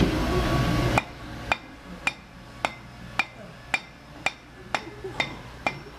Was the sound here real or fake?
real